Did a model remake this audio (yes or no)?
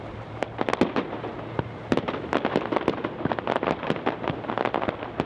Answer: no